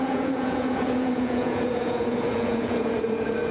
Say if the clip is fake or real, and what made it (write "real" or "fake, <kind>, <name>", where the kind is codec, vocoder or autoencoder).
fake, vocoder, Vocos